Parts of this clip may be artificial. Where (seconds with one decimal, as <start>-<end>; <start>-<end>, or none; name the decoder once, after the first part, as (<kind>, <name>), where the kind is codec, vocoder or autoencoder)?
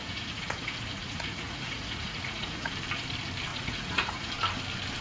0.0-2.7 (vocoder, Vocos); 3.5-4.3